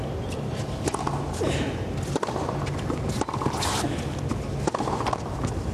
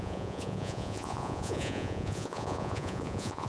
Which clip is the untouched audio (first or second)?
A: first